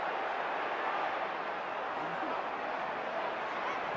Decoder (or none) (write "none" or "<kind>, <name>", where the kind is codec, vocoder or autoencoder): none